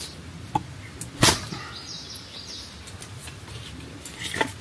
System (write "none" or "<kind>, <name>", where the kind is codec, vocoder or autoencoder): none